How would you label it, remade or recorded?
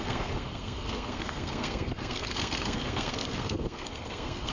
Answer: remade